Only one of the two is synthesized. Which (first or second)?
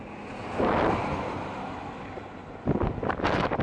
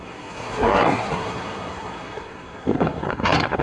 second